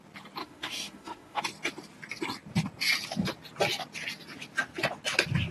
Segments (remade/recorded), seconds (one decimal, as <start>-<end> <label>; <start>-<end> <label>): 0.0-0.4 recorded; 0.4-1.4 remade; 1.4-5.5 recorded